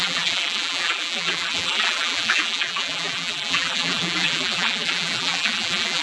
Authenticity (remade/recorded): remade